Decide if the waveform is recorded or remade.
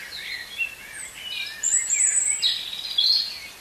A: recorded